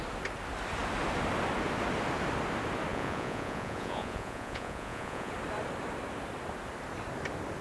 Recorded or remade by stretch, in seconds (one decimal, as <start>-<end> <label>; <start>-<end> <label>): 0.0-2.9 recorded; 2.9-5.3 remade; 5.3-7.6 recorded